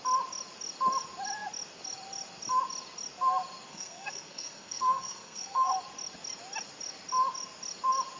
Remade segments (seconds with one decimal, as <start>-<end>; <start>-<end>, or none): 3.7-5.7